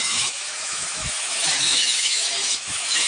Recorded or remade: remade